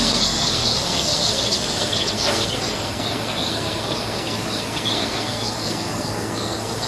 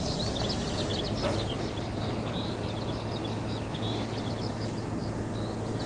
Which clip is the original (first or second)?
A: second